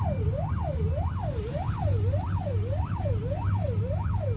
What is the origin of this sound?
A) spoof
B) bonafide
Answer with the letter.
B